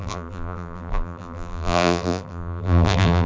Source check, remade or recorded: remade